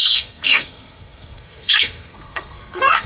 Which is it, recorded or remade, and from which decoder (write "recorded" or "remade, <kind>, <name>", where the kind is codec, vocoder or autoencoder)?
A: remade, codec, SNAC